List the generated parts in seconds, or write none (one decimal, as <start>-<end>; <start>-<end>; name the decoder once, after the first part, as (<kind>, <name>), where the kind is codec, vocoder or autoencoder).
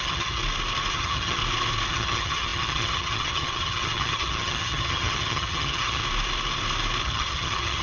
0.0-0.4 (vocoder, HiFi-GAN); 0.9-1.4; 1.9-6.0; 7.0-7.8